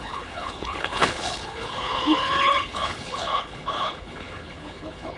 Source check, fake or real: fake